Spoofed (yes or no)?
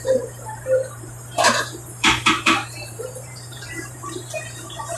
yes